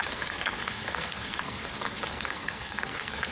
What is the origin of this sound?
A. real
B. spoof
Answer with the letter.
B